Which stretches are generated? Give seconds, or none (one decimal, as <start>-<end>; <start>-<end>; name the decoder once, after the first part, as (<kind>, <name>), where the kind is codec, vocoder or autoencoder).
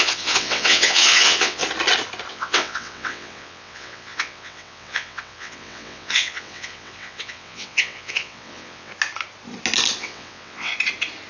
0.0-1.6 (vocoder, WaveNeXt); 2.3-8.9; 10.0-10.7